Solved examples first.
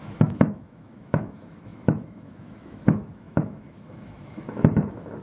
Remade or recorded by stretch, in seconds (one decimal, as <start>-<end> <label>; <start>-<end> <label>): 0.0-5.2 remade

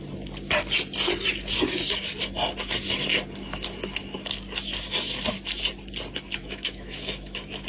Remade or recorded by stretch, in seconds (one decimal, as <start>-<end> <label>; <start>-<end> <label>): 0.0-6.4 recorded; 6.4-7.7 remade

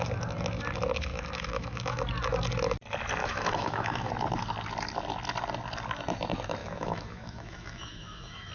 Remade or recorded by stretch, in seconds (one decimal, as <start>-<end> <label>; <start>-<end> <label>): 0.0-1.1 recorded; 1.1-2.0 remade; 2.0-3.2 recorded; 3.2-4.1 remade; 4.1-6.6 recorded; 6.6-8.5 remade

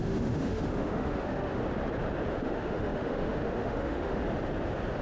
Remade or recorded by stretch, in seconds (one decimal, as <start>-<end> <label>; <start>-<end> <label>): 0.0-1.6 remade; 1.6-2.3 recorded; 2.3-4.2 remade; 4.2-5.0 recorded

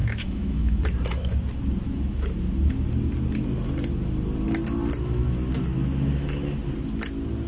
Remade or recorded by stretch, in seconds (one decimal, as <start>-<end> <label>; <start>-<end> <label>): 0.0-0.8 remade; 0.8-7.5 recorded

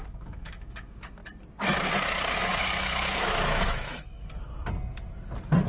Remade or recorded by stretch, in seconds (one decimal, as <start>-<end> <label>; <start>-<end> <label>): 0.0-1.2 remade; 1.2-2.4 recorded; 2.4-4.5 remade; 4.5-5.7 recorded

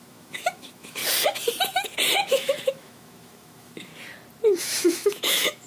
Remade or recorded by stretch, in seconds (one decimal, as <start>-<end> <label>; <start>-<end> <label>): 0.0-1.0 remade; 1.0-2.3 recorded; 2.3-3.9 remade; 3.9-4.6 recorded; 4.6-5.7 remade

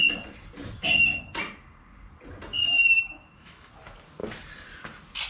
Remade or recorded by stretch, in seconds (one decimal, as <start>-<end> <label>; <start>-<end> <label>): 0.0-2.6 recorded; 2.6-3.7 remade; 3.7-5.3 recorded